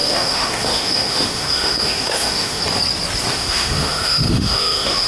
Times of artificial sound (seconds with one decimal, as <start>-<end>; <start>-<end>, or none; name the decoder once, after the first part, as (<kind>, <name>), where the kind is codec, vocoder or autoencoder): 0.0-2.6 (autoencoder, DAC-VAE); 3.3-5.1